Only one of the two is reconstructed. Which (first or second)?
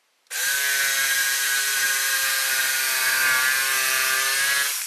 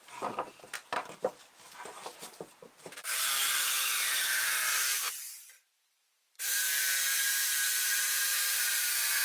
second